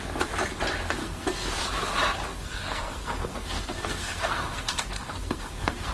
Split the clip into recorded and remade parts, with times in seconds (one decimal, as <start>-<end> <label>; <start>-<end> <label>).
0.0-1.0 recorded; 1.0-1.6 remade; 1.6-2.3 recorded; 2.3-5.9 remade